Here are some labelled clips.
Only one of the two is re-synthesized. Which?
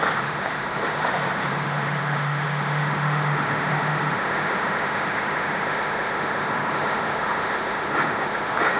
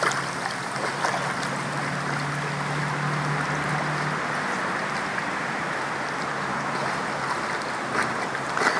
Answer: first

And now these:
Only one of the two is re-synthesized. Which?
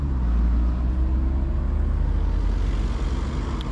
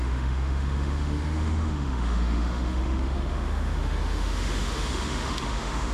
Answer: second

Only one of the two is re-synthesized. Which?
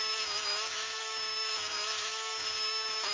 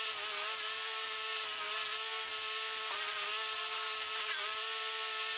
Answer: first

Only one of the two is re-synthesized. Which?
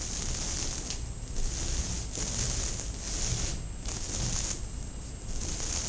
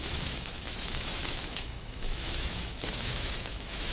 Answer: second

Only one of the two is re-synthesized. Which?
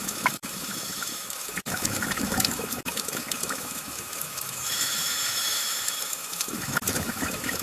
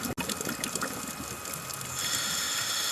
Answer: first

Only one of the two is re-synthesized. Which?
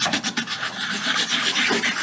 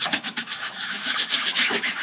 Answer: second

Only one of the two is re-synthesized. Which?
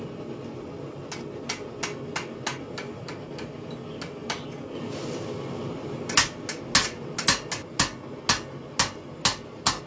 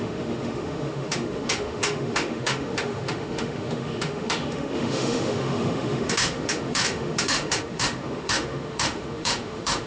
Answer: second